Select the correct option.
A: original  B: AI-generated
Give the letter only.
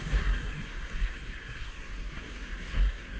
B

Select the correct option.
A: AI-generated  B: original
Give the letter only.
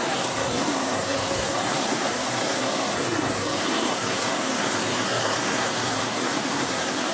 A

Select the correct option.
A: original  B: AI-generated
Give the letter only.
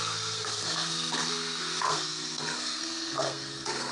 B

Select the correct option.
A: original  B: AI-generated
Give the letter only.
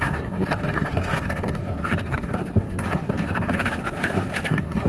B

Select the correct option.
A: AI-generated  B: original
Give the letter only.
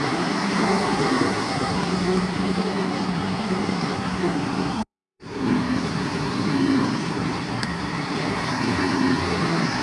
A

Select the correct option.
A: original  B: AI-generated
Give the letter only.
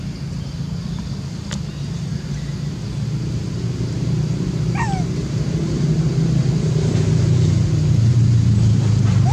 A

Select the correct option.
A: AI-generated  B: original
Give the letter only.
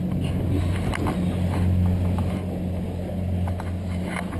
B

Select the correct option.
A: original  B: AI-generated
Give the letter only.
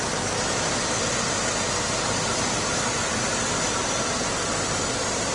A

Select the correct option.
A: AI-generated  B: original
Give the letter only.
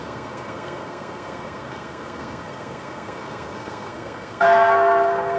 A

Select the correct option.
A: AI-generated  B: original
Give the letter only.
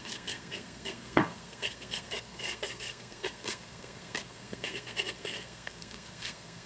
A